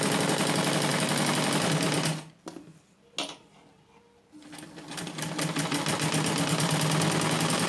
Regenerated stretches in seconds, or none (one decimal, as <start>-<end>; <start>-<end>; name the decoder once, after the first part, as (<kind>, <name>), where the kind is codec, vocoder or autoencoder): none